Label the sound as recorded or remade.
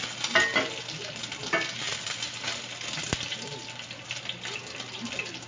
recorded